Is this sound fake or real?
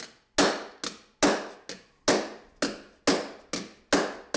real